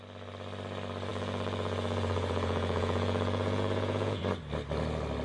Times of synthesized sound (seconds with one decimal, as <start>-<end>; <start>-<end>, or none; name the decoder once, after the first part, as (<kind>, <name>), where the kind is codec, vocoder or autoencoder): 1.1-4.2 (vocoder, Vocos)